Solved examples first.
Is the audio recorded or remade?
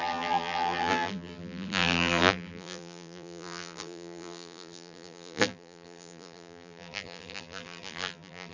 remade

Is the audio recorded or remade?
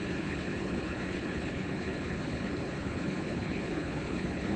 remade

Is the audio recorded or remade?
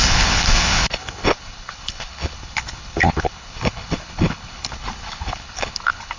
remade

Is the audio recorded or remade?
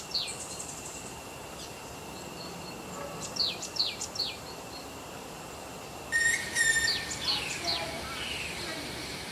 remade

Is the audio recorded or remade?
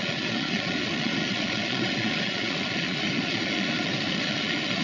remade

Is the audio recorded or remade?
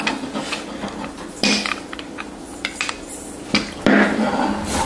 recorded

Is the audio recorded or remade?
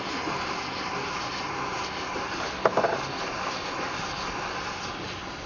recorded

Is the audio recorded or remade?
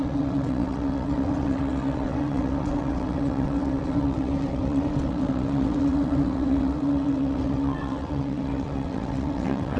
remade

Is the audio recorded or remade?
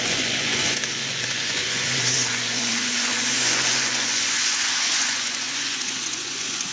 remade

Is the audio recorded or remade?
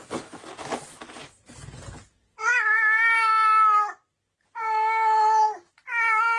recorded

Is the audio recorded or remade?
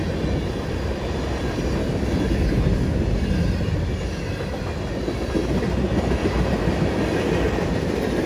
recorded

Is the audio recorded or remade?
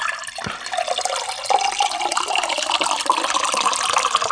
recorded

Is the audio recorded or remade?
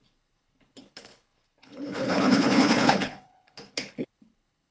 remade